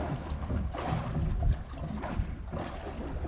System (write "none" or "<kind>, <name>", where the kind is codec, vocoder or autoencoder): none